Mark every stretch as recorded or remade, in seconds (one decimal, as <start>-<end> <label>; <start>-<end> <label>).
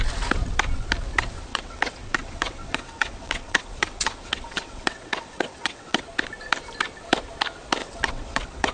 0.0-1.5 recorded; 1.5-6.0 remade; 6.0-7.8 recorded; 7.8-8.7 remade